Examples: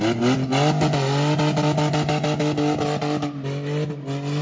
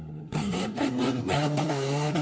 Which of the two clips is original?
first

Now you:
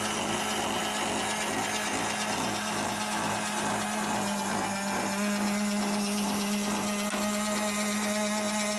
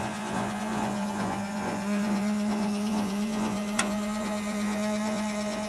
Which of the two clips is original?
first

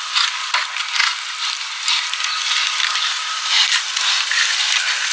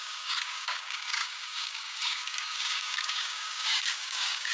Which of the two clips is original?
first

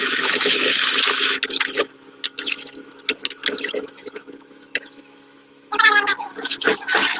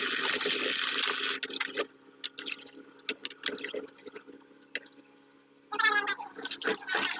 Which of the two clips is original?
second